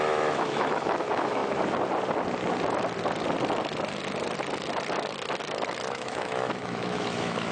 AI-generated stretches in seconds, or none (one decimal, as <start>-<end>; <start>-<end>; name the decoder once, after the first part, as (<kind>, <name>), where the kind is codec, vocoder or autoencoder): 0.0-1.4 (autoencoder, DAC-VAE); 5.9-7.5